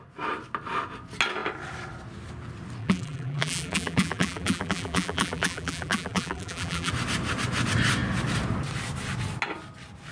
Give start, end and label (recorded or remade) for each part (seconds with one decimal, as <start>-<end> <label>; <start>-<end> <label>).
0.0-2.8 recorded; 2.8-6.9 remade; 6.9-10.1 recorded